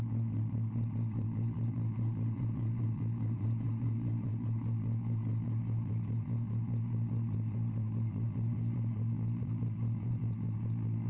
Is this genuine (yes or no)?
no